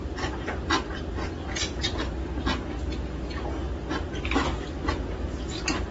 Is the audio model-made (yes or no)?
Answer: no